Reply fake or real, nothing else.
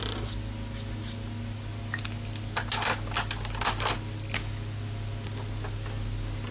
real